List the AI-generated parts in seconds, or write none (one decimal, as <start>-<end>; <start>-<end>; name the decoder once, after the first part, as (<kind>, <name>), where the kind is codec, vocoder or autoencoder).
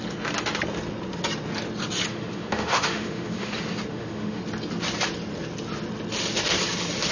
2.1-3.5 (autoencoder, DAC-VAE); 3.9-4.4